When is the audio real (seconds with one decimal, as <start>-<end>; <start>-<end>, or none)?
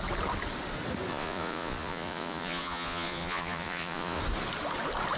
0.0-1.1; 4.2-5.2